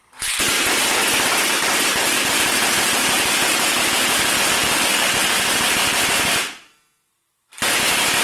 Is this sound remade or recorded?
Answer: recorded